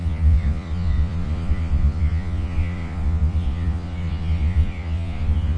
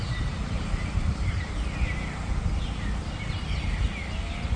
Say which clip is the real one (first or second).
second